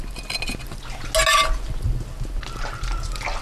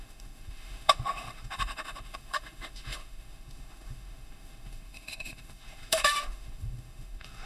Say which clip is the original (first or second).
first